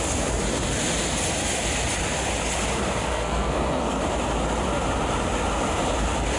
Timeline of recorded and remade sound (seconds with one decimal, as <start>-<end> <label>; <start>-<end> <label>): 0.0-3.1 recorded; 3.1-4.0 remade; 4.0-6.4 recorded